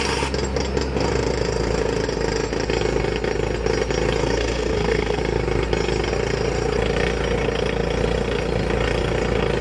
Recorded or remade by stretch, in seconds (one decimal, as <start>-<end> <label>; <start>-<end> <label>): 0.0-4.2 recorded; 4.2-5.2 remade; 5.2-9.6 recorded